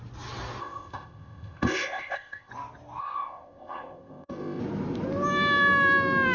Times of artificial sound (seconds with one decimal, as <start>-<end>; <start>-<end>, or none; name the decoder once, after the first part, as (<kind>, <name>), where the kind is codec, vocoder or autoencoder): 0.6-2.5 (codec, ZipCodec); 3.0-4.6